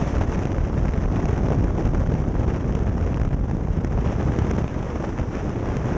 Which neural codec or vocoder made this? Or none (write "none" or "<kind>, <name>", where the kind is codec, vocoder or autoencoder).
none